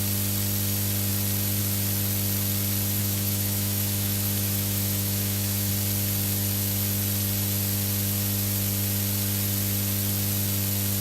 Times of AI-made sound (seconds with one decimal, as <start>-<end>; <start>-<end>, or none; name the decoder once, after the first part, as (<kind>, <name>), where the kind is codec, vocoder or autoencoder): 3.0-5.7 (autoencoder, DAC-VAE)